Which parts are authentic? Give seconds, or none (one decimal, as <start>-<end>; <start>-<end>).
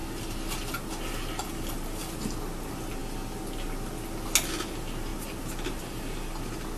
0.0-6.8